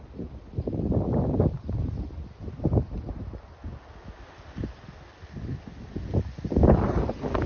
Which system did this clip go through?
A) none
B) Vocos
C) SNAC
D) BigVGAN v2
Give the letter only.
A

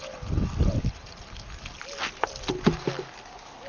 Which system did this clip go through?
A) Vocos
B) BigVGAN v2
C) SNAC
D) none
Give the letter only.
D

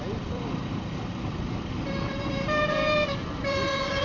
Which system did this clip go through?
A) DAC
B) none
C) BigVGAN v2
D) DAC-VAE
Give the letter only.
C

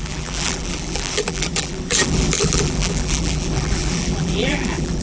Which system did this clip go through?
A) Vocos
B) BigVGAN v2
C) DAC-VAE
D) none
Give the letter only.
B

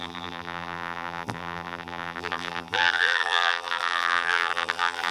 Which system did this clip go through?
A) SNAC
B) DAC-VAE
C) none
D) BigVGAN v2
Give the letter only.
D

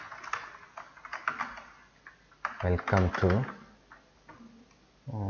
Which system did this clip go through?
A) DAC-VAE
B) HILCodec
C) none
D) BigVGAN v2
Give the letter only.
C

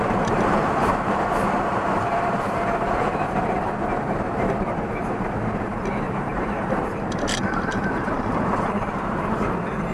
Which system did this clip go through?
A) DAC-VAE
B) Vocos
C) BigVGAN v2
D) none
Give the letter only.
C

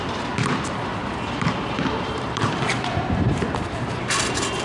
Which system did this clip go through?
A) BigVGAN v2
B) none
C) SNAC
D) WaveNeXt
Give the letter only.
A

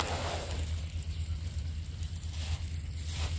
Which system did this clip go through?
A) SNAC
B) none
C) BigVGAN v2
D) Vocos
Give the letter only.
B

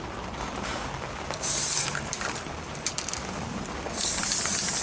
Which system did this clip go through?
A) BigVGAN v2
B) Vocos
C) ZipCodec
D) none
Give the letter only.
A